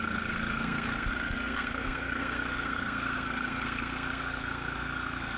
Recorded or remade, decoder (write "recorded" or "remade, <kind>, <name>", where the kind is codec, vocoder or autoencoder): remade, codec, SNAC